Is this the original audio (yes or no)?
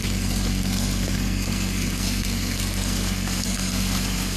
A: no